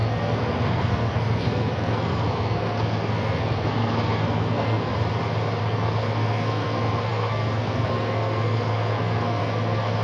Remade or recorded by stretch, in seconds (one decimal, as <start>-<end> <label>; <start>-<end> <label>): 0.0-4.9 remade; 4.9-5.6 recorded; 5.6-10.0 remade

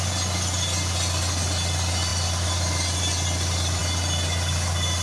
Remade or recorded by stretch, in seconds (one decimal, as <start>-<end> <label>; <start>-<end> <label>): 0.0-5.0 recorded

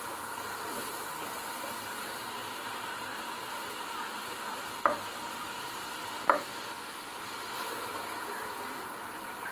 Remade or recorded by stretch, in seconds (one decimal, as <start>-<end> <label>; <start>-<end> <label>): 0.0-9.5 recorded

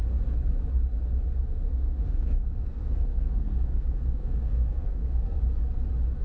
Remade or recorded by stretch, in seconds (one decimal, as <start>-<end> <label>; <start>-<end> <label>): 0.0-1.7 recorded; 1.7-5.4 remade; 5.4-6.2 recorded

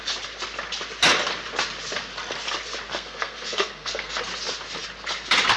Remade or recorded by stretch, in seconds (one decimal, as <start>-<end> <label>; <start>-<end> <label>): 0.0-2.9 recorded; 2.9-4.2 remade; 4.2-5.6 recorded

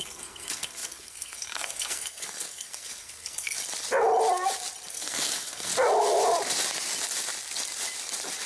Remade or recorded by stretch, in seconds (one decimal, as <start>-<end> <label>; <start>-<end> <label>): 0.0-3.6 remade; 3.6-4.9 recorded; 4.9-5.7 remade; 5.7-8.5 recorded